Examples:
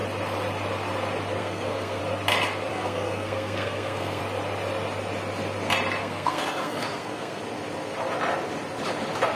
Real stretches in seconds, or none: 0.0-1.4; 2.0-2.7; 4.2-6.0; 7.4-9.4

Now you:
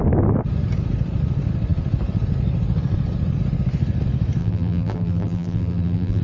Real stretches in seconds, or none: 0.0-4.4

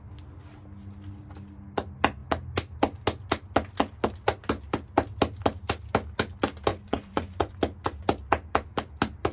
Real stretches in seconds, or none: 0.0-6.7; 7.5-9.3

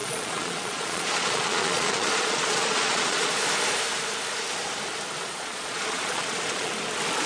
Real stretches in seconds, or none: 3.3-5.2; 6.7-7.3

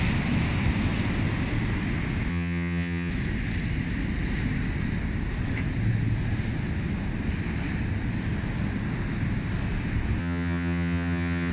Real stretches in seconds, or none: 0.0-2.3; 3.1-10.2

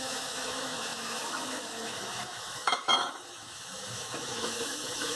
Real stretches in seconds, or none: none